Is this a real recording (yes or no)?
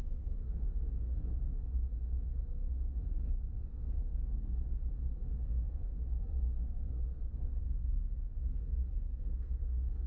no